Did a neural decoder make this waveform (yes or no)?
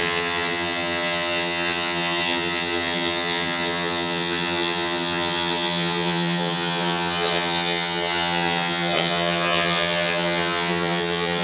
yes